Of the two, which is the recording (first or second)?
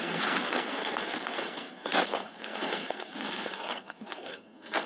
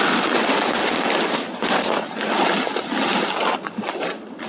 second